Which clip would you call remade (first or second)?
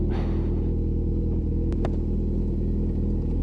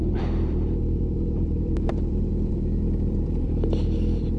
second